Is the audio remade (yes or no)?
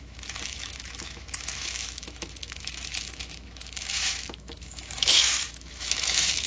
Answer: yes